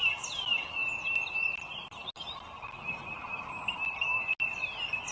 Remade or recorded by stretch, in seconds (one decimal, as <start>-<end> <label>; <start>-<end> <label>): 0.0-5.1 recorded